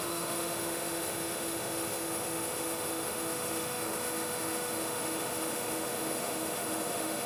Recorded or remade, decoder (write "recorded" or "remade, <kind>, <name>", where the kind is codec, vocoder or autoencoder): remade, autoencoder, DAC-VAE